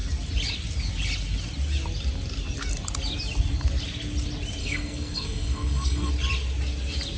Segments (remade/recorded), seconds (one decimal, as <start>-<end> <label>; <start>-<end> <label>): 0.0-4.6 recorded; 4.6-6.1 remade; 6.1-7.2 recorded

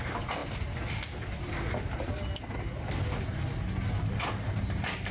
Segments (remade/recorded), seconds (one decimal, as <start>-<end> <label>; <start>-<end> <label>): 0.0-5.1 recorded

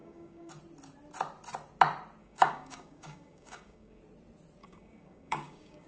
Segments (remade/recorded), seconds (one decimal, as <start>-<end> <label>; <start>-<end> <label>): 0.0-0.5 remade; 0.5-2.2 recorded; 2.2-4.0 remade; 4.0-4.6 recorded; 4.6-5.9 remade

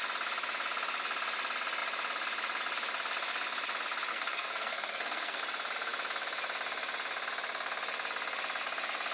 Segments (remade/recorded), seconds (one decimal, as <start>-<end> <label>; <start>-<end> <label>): 0.0-4.1 recorded; 4.1-5.4 remade; 5.4-9.1 recorded